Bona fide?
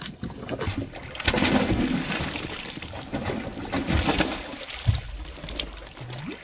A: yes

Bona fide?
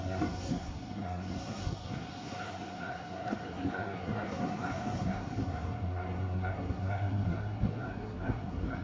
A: no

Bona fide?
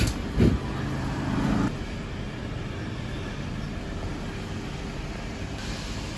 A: yes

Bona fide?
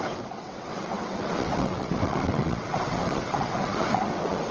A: no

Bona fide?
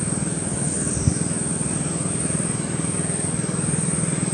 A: yes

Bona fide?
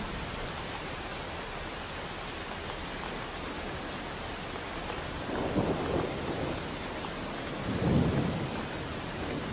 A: yes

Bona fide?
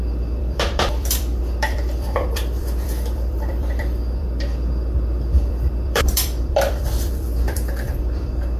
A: no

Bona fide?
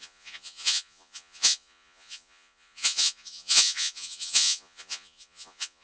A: no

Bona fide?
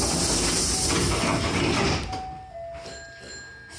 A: yes